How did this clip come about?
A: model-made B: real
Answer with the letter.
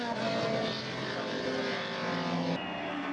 B